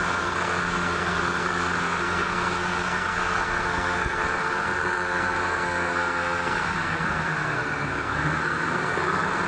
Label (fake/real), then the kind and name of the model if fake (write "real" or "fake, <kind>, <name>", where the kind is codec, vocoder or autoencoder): fake, codec, SNAC